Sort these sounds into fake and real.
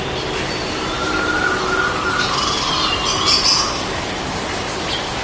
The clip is real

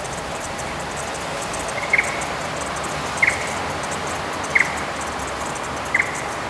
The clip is real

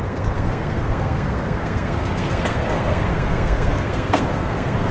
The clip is fake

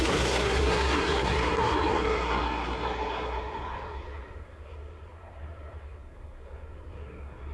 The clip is fake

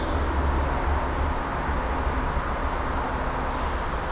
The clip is real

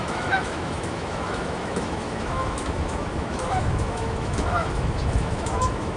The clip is fake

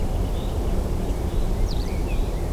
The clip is fake